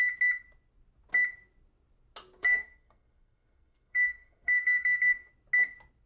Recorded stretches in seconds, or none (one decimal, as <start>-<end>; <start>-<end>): 0.0-2.4; 5.3-6.1